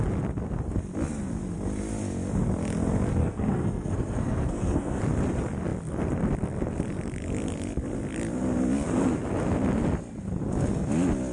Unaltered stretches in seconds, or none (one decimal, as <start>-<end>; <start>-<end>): 0.0-3.2; 5.0-11.3